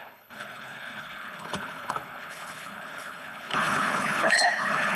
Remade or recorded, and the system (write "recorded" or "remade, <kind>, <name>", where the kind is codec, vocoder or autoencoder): remade, codec, HILCodec